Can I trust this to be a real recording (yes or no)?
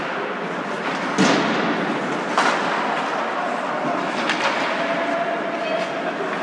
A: yes